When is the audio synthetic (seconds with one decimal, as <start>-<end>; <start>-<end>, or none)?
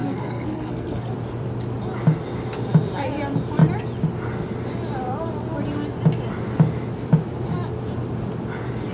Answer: 0.0-1.1